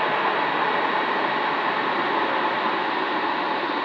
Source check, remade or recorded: recorded